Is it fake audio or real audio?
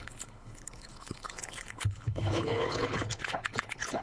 fake